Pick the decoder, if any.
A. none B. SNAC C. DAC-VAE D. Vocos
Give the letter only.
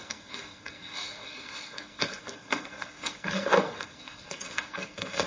B